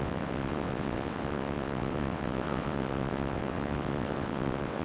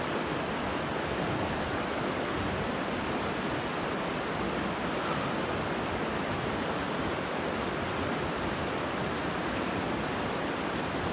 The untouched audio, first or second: second